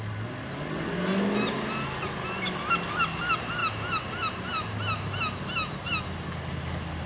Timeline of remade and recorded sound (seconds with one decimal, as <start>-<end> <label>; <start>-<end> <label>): 0.0-7.1 recorded